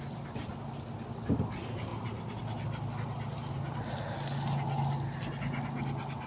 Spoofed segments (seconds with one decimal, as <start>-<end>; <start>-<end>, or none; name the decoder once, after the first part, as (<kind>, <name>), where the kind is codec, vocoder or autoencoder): none